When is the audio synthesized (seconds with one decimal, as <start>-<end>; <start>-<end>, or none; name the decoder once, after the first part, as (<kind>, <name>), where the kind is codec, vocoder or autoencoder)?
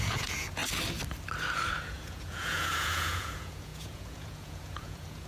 0.0-0.6 (vocoder, Vocos); 1.7-5.3